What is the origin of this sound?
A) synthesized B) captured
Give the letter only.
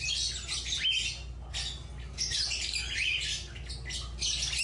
B